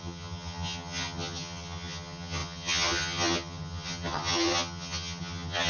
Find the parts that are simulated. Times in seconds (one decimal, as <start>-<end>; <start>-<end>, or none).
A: 0.0-5.7